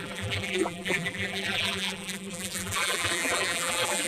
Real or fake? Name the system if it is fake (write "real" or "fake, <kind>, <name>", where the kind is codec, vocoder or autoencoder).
fake, vocoder, BigVGAN v2